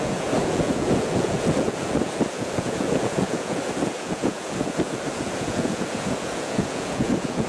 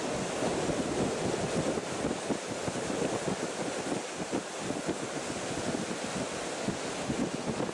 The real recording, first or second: second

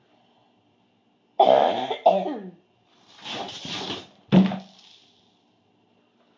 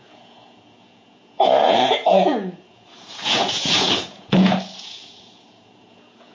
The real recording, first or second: first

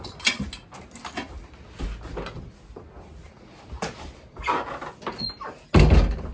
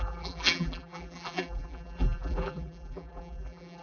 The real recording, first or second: first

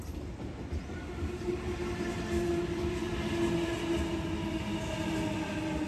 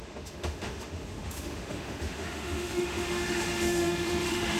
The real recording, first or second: first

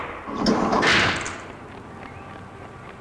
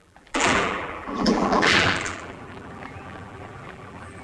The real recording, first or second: first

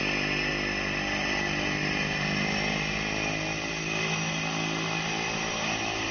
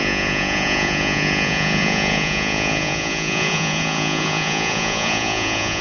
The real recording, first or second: first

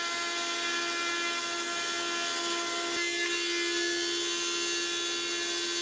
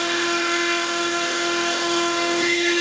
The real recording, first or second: first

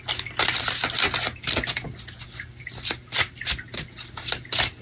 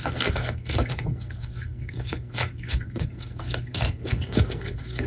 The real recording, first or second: first